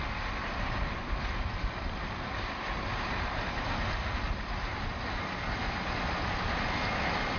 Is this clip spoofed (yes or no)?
no